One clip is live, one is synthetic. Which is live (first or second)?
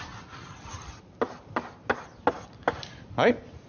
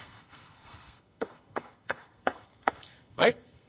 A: first